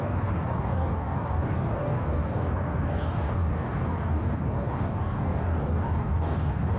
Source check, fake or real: fake